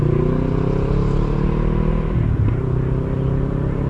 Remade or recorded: recorded